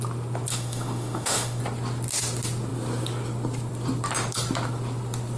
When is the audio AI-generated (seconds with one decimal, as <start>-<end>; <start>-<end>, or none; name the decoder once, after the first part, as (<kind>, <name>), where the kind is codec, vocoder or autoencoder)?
0.5-1.6 (autoencoder, DAC-VAE)